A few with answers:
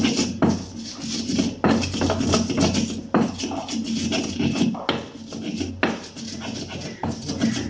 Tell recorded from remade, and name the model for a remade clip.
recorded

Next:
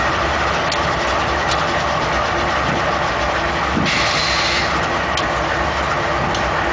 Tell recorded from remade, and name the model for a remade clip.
recorded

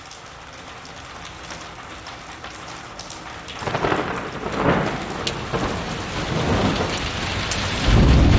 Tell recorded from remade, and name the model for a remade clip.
recorded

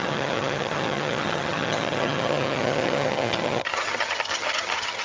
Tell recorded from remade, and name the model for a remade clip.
remade, vocoder, HiFi-GAN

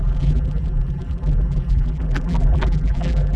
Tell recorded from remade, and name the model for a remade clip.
remade, vocoder, BigVGAN v2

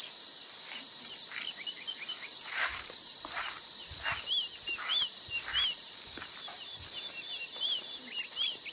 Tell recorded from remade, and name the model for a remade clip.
remade, vocoder, BigVGAN v2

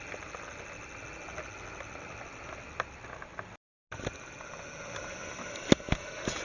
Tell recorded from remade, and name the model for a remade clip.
recorded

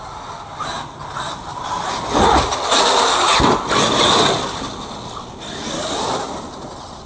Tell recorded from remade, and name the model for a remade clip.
recorded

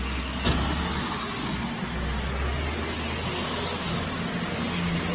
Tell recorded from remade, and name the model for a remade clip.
recorded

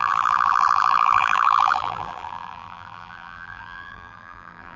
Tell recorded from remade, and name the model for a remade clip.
remade, vocoder, BigVGAN v2